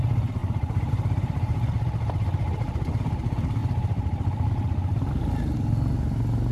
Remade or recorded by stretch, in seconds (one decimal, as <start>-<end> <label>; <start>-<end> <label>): 0.0-0.4 recorded; 0.4-0.9 remade; 0.9-3.6 recorded; 3.6-4.5 remade; 4.5-6.5 recorded